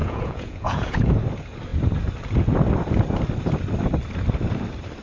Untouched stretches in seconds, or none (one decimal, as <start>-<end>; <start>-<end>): 1.1-5.0